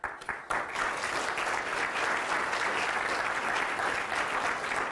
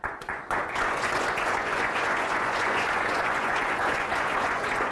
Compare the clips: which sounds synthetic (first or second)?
second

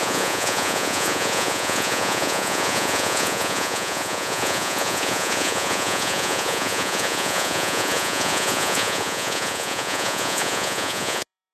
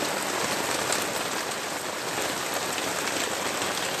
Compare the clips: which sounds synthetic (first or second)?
first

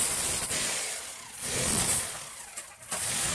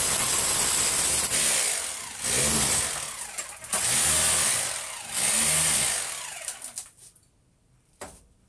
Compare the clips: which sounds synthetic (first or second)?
first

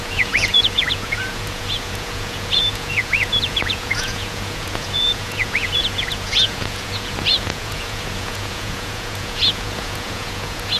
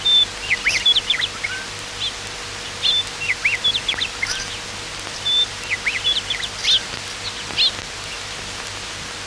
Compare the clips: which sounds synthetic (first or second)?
first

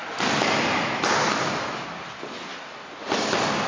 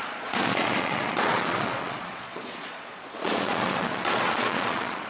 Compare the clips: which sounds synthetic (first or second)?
second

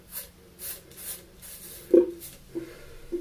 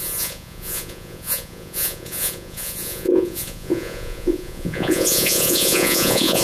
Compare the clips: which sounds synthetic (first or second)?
second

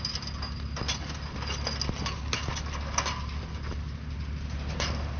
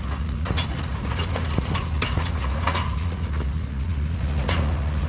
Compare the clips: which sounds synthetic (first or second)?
second